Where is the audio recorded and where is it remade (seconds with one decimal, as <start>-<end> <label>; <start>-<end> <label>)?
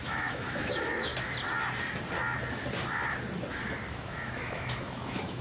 0.0-1.1 remade; 1.1-3.9 recorded; 3.9-5.4 remade